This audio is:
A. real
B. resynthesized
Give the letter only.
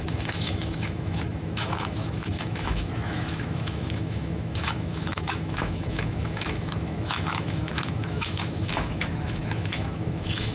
B